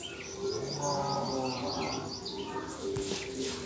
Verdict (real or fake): real